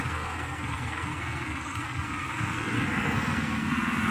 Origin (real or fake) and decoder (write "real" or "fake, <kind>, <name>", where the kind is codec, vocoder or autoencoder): fake, codec, SNAC